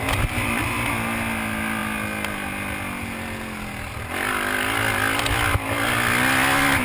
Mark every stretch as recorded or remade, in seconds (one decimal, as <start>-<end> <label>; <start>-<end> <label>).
0.0-6.8 recorded